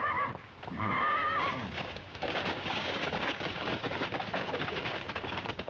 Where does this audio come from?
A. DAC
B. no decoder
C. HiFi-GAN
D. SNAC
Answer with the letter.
A